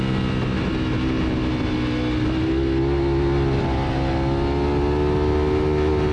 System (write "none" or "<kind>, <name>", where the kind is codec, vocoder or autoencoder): none